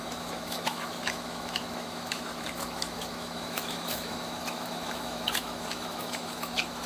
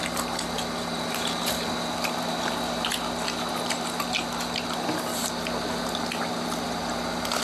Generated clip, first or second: first